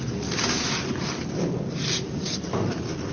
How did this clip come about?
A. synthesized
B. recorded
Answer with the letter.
B